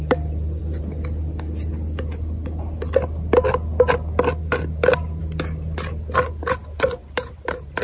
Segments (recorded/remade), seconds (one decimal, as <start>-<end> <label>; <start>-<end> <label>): 0.0-7.0 recorded; 7.0-7.8 remade